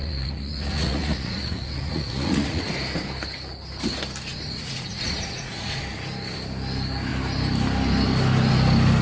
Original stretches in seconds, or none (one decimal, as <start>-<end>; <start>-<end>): 2.6-4.3; 5.8-9.0